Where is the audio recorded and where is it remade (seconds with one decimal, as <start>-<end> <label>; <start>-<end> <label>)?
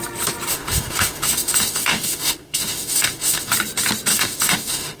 0.0-0.5 recorded; 0.5-3.5 remade; 3.5-4.1 recorded; 4.1-5.0 remade